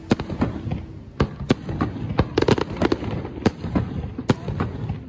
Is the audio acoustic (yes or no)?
yes